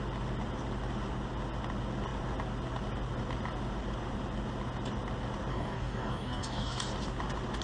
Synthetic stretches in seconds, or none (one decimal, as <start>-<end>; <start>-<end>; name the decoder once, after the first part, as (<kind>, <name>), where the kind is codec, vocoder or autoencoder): 5.5-6.9 (codec, DAC)